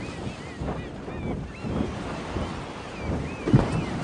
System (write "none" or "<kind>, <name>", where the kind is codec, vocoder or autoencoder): none